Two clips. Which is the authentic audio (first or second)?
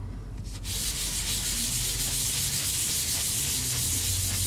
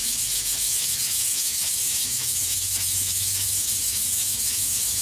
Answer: first